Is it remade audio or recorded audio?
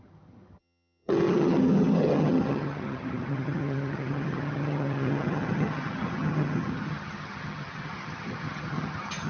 remade